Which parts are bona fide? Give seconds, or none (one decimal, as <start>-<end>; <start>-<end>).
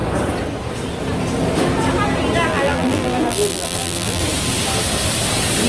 0.0-2.5; 4.2-5.7